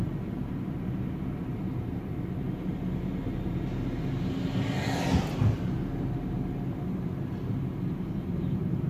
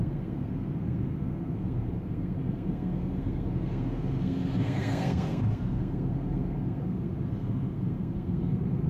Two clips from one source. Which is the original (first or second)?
first